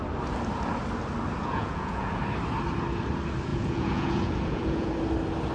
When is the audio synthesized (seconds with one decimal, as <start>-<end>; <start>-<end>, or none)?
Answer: 1.4-2.2; 3.5-4.9